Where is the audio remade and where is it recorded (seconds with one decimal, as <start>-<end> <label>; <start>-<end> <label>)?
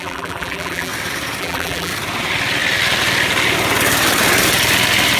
0.0-0.9 remade; 0.9-1.4 recorded; 1.4-1.9 remade; 1.9-5.2 recorded